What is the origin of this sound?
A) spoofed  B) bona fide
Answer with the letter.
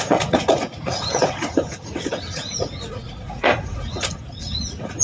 A